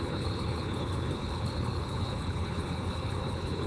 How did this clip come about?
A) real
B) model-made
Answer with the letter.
B